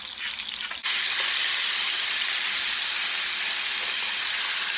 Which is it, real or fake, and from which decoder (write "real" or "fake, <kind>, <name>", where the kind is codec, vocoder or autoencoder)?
real